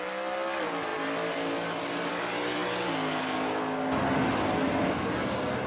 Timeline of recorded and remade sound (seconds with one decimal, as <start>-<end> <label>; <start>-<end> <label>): 0.0-5.7 recorded